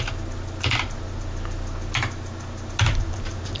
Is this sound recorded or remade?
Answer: recorded